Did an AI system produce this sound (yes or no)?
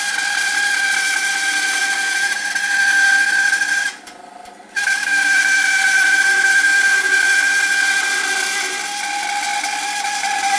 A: no